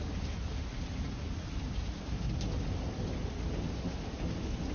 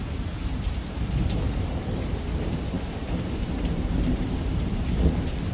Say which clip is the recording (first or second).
first